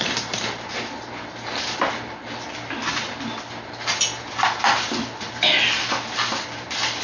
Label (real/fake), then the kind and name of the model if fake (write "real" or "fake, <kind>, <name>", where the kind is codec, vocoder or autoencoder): real